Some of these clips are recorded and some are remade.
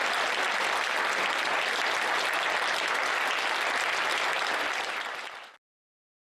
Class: recorded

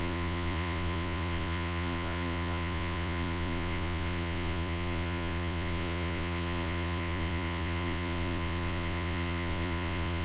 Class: remade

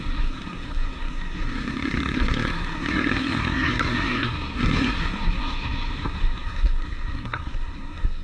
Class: remade